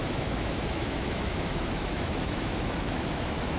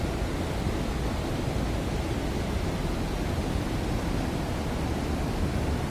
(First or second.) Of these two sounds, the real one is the second